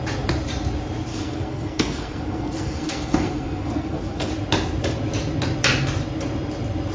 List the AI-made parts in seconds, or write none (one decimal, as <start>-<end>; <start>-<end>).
1.1-4.3

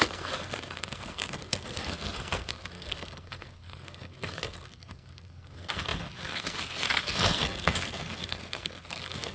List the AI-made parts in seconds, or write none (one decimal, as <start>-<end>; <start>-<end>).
0.0-9.3